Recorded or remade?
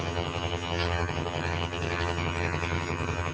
remade